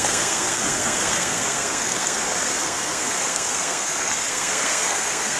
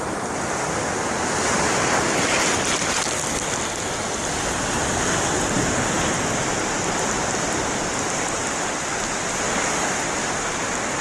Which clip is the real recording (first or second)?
second